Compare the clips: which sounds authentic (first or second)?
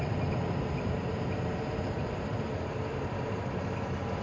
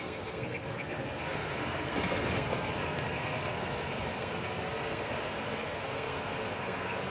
first